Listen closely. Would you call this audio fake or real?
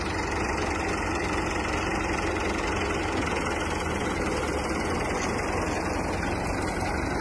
real